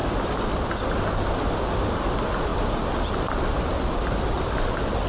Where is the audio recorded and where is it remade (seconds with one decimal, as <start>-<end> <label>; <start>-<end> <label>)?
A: 0.0-2.5 recorded; 2.5-5.1 remade

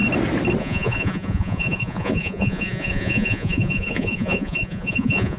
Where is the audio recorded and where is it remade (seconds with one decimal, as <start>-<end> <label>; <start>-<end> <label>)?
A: 0.0-0.6 recorded; 0.6-5.4 remade

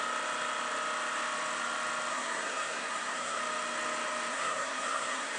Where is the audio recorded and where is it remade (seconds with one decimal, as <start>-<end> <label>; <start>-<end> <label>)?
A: 0.0-2.1 recorded; 2.1-3.4 remade; 3.4-4.3 recorded; 4.3-5.4 remade

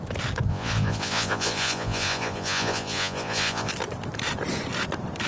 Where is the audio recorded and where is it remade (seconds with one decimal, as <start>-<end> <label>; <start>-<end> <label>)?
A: 0.0-0.5 recorded; 0.5-3.7 remade; 3.7-5.3 recorded